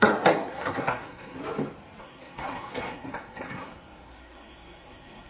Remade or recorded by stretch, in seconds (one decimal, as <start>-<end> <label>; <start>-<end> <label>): 0.0-1.4 remade; 1.4-2.0 recorded; 2.0-5.3 remade